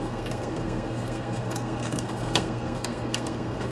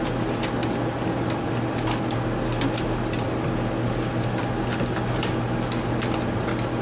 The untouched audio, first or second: second